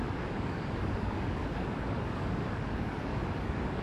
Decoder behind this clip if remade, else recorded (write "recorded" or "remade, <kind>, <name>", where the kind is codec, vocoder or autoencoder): remade, codec, DAC